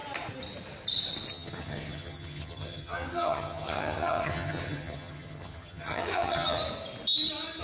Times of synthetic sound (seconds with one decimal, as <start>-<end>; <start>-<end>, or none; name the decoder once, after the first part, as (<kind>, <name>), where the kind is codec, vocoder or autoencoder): 1.3-6.6 (vocoder, HiFi-GAN)